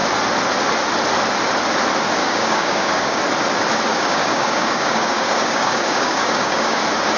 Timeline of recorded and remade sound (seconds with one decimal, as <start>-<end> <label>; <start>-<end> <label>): 0.0-2.2 recorded; 2.2-3.2 remade; 3.2-3.9 recorded; 3.9-6.8 remade; 6.8-7.2 recorded